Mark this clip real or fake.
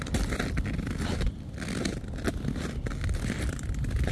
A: real